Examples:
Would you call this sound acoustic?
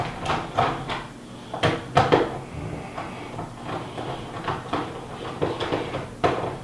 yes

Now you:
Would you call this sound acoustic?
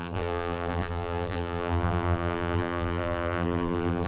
no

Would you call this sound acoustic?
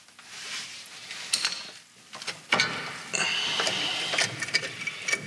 yes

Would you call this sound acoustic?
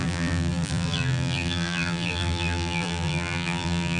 no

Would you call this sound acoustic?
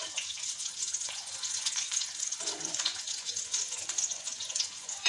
no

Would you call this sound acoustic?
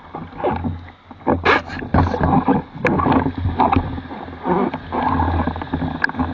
yes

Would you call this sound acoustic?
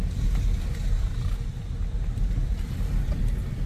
yes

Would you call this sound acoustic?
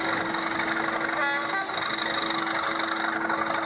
yes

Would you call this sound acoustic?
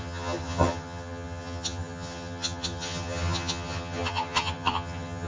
no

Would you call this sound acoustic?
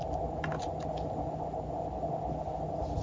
yes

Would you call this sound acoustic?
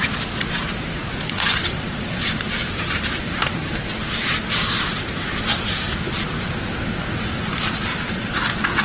no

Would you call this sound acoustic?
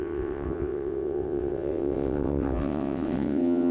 no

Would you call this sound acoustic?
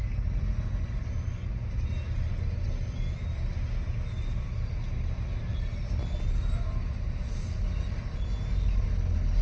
yes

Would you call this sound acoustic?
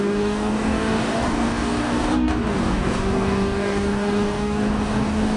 no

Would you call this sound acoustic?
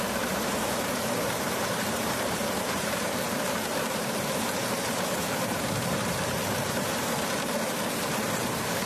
no